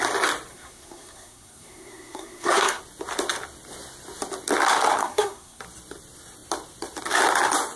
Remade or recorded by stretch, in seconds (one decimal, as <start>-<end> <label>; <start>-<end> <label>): 0.0-0.5 recorded; 0.5-2.8 remade; 2.8-5.0 recorded; 5.0-5.6 remade; 5.6-7.8 recorded